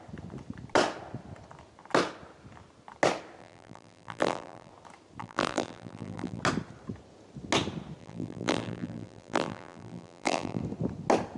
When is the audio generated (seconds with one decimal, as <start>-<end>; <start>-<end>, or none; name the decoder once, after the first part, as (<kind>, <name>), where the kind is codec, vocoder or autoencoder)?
3.4-4.7 (vocoder, BigVGAN v2); 5.2-6.4; 8.0-10.6